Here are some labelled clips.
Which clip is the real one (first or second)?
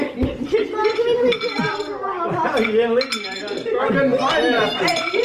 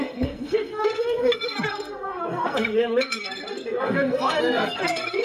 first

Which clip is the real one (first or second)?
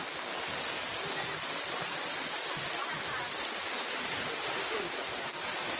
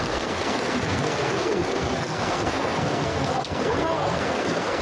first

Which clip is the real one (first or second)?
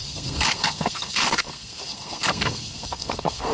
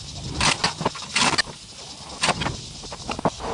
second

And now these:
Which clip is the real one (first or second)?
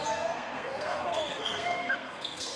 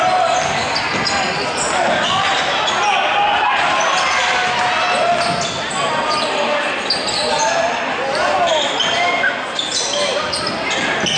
second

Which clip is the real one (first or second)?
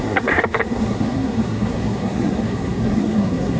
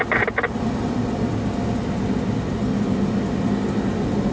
second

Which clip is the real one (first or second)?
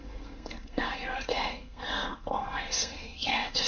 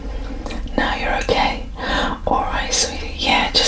second